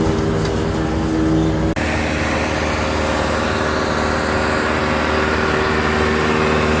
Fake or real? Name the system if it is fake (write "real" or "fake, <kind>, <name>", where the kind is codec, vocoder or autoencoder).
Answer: real